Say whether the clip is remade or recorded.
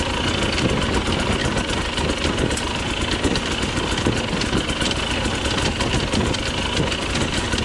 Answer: recorded